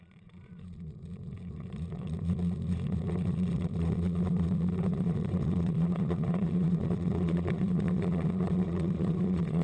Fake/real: fake